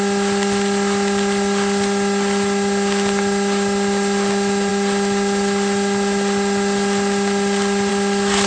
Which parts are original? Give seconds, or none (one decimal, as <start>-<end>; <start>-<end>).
0.0-8.5